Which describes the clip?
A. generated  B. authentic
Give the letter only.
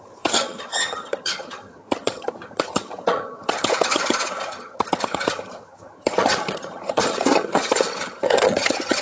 A